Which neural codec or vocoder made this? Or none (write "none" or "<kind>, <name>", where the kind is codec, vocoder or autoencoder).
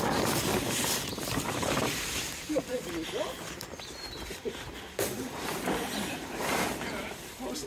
vocoder, BigVGAN v2